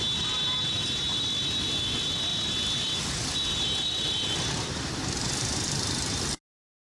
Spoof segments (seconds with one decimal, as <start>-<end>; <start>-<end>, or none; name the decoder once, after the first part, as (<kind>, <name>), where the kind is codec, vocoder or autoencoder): 3.5-6.0 (vocoder, BigVGAN v2)